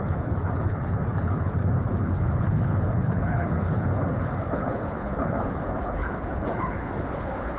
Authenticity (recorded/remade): remade